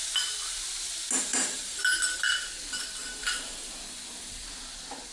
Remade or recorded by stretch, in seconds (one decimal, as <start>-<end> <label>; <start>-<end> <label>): 0.0-1.3 recorded; 1.3-1.8 remade; 1.8-3.0 recorded; 3.0-3.7 remade; 3.7-5.1 recorded